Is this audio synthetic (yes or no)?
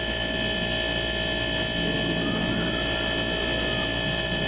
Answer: yes